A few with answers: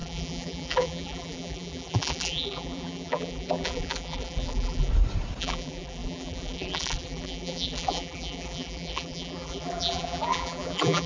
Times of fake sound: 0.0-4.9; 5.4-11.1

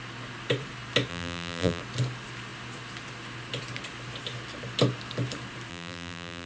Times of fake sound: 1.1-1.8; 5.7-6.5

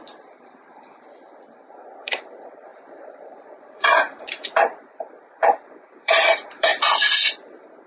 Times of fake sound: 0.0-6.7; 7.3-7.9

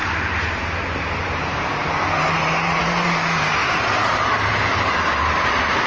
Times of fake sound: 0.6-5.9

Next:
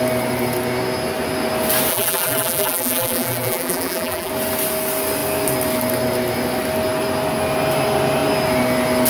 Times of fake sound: 1.9-4.3

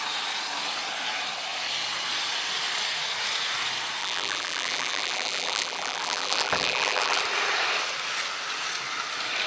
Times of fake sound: 4.0-7.2